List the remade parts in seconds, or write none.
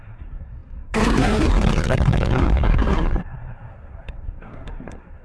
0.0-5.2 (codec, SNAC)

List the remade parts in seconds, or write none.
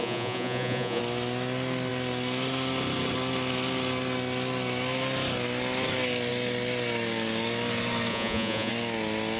0.0-1.0 (vocoder, Vocos); 8.1-8.7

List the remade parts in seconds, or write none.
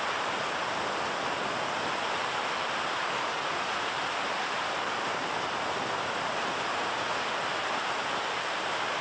3.3-3.9 (vocoder, Vocos); 6.7-7.3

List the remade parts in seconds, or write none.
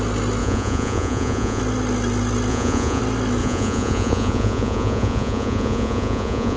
0.4-1.6 (vocoder, Vocos); 2.5-3.0; 3.4-6.6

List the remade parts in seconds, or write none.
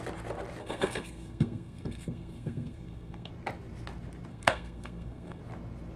0.6-3.3 (codec, SNAC); 4.3-5.4